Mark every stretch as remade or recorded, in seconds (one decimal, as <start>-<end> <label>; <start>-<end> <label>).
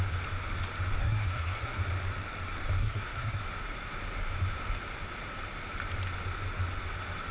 0.0-1.0 recorded; 1.0-1.8 remade; 1.8-2.8 recorded; 2.8-3.4 remade; 3.4-7.3 recorded